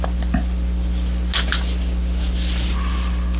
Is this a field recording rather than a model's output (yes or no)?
yes